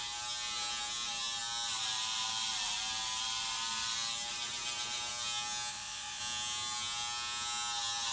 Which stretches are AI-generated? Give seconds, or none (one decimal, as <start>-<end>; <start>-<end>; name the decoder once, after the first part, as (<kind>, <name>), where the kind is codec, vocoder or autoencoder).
5.7-6.2 (vocoder, Vocos)